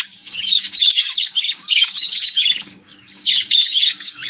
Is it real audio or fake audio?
fake